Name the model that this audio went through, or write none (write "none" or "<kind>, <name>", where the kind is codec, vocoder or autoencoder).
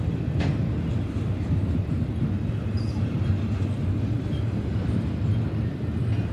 none